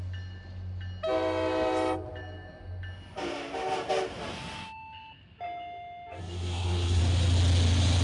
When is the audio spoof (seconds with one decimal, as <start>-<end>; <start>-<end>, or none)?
6.2-7.0